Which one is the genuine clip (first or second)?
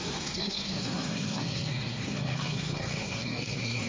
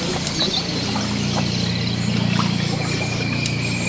second